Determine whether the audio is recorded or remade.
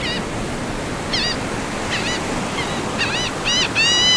recorded